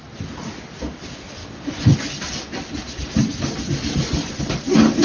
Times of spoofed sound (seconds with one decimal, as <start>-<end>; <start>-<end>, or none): none